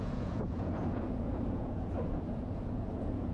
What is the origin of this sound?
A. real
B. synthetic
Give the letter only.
B